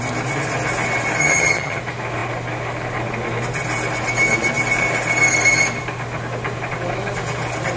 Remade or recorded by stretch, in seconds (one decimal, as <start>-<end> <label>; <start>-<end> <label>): 0.0-1.2 recorded; 1.2-1.8 remade; 1.8-7.8 recorded